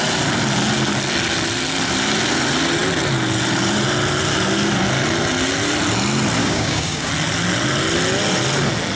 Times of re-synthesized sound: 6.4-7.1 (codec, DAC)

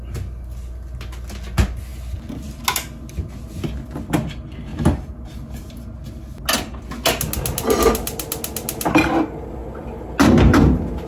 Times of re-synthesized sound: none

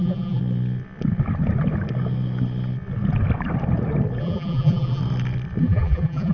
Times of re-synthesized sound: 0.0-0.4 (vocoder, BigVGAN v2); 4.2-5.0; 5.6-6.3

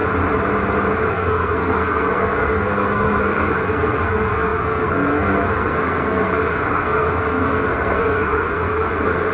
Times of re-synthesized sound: 1.1-9.3 (codec, SNAC)

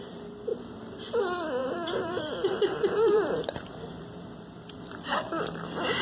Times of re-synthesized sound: 0.5-1.2 (vocoder, BigVGAN v2); 1.6-5.2

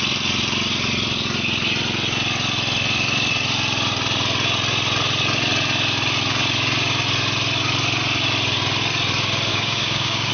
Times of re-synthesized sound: 9.5-10.3 (codec, DAC)

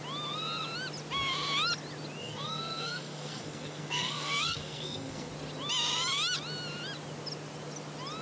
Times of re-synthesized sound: 2.2-5.3 (codec, SNAC)

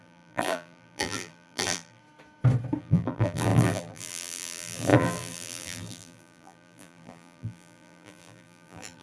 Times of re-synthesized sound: 0.0-2.0 (vocoder, BigVGAN v2); 2.8-9.0